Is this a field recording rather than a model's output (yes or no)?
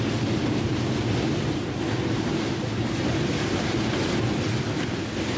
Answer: yes